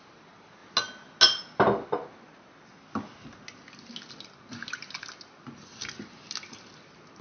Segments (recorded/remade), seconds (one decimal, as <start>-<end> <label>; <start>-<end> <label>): 0.0-7.2 recorded

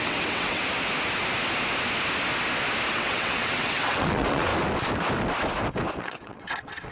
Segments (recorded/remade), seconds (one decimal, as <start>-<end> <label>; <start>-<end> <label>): 0.0-0.6 remade; 0.6-2.9 recorded; 2.9-4.5 remade; 4.5-6.0 recorded; 6.0-6.9 remade

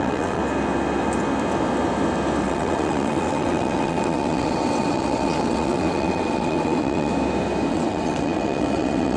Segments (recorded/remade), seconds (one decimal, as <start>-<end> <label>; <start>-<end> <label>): 0.0-0.4 remade; 0.4-2.4 recorded; 2.4-7.1 remade; 7.1-7.7 recorded; 7.7-9.2 remade

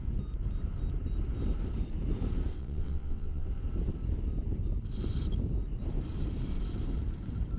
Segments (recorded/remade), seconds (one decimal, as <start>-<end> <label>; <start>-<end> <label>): 0.0-2.5 recorded; 2.5-3.5 remade; 3.5-7.6 recorded